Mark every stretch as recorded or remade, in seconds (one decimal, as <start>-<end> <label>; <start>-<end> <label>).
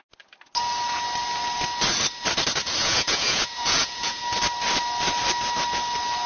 0.0-2.8 recorded; 2.8-4.2 remade; 4.2-6.3 recorded